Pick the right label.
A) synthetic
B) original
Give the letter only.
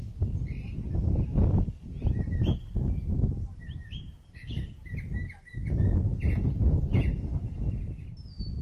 B